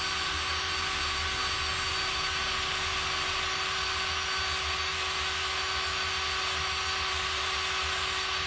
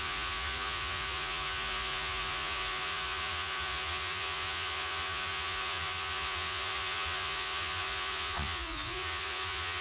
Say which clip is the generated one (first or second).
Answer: second